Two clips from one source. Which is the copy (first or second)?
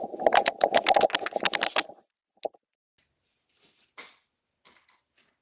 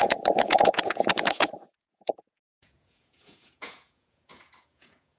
second